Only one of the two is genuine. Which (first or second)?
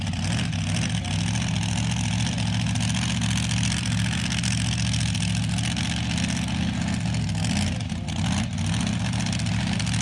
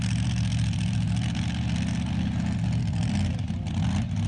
first